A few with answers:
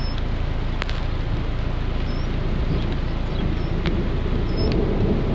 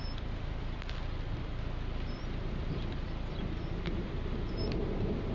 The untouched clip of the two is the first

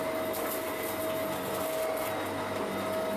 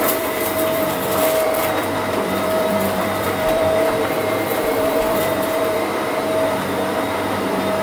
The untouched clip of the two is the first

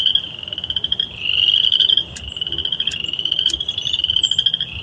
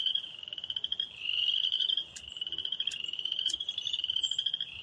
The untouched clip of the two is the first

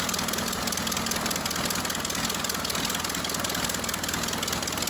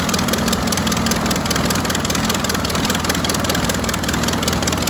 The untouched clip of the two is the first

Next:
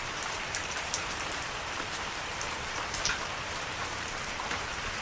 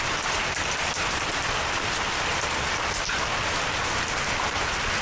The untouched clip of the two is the second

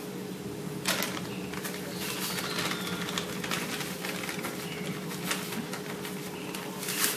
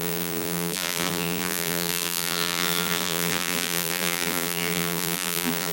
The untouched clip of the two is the first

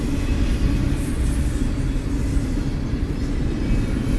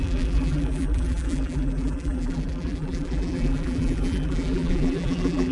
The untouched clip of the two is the first